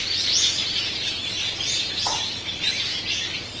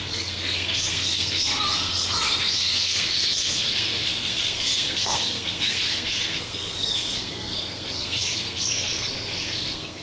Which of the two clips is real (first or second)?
first